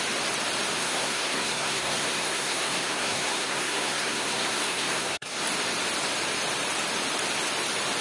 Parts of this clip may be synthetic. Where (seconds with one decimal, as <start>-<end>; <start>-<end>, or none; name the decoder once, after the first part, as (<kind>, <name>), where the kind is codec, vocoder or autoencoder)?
0.8-5.4 (codec, SNAC)